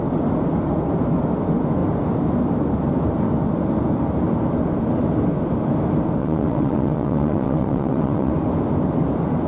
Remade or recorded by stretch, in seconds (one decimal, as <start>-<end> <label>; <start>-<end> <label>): 0.0-6.2 recorded; 6.2-8.3 remade; 8.3-9.5 recorded